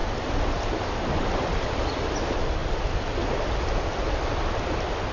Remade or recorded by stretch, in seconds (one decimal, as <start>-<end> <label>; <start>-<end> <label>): 0.0-1.0 remade; 1.0-5.1 recorded

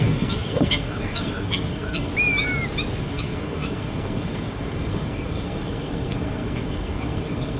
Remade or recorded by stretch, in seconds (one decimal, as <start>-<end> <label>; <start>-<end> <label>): 0.0-2.1 remade; 2.1-3.0 recorded; 3.0-7.6 remade

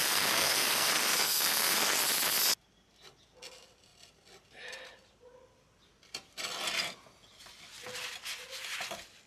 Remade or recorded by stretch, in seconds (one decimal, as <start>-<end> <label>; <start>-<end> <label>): 0.0-2.0 remade; 2.0-9.3 recorded

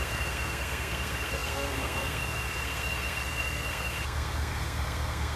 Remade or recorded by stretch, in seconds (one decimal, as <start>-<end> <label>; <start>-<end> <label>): 0.0-5.4 remade